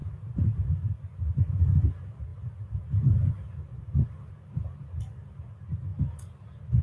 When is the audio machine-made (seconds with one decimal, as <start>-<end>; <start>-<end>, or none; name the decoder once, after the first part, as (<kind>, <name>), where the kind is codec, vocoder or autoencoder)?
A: 0.0-1.9 (vocoder, BigVGAN v2); 2.3-5.5

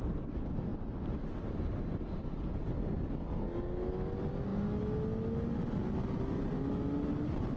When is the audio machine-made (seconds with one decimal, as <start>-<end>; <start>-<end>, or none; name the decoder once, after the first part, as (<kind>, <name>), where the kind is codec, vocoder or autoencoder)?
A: none

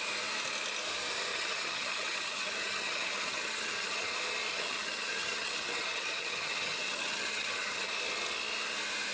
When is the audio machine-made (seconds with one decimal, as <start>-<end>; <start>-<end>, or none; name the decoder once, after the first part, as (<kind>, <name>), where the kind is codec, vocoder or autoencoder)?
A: 1.3-4.1 (vocoder, HiFi-GAN); 4.5-7.9

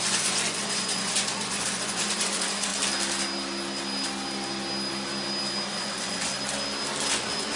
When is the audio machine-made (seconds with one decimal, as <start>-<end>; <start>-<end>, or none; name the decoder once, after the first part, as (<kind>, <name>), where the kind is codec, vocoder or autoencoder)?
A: 0.0-2.7 (vocoder, Vocos); 5.7-6.3; 7.1-7.6

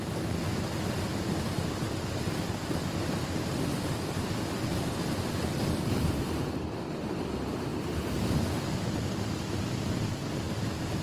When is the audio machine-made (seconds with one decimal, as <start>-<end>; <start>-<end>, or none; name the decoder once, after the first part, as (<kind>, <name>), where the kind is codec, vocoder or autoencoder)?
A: 0.0-11.0 (vocoder, BigVGAN v2)

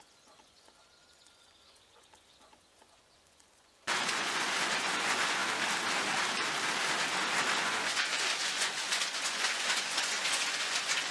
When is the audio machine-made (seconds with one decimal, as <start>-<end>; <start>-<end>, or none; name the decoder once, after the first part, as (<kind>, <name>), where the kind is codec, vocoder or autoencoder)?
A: 0.0-5.4 (vocoder, Vocos); 7.6-11.1